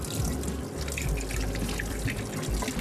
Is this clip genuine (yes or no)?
yes